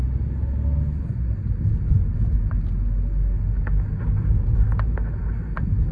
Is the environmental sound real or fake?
real